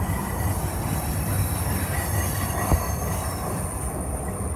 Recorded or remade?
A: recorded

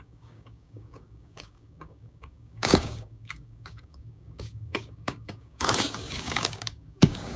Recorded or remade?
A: remade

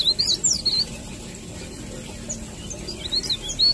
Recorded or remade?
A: recorded